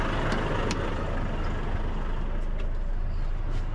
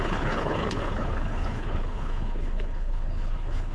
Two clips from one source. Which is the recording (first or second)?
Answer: first